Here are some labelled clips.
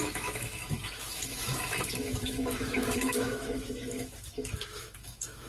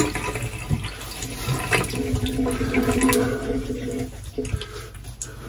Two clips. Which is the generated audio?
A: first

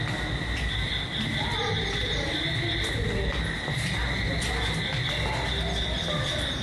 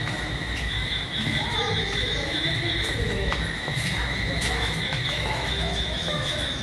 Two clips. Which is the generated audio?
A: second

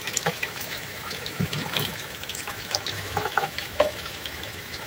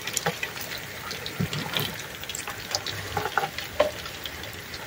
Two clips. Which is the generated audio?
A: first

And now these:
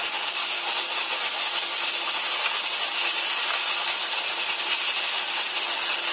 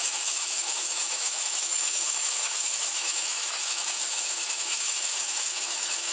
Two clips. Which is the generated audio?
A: second